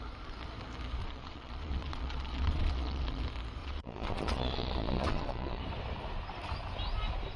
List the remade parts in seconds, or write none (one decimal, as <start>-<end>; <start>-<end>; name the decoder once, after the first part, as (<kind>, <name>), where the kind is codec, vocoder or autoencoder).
1.0-3.2 (vocoder, Vocos); 3.6-5.6